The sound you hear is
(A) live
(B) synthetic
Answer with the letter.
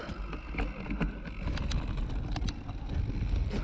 A